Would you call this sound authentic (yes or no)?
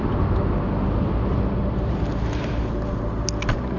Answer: yes